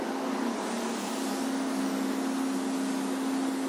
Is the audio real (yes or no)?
yes